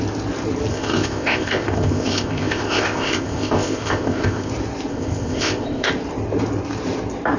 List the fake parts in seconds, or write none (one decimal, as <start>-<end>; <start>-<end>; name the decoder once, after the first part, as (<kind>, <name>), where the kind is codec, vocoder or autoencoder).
0.7-4.5 (codec, ZipCodec); 4.9-5.9